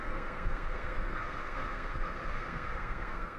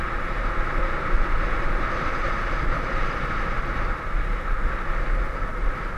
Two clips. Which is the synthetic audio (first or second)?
first